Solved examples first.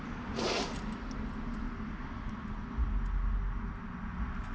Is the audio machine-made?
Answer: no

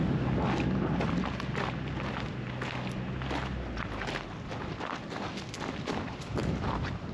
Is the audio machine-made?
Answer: no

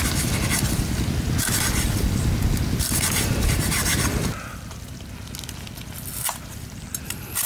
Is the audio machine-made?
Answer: no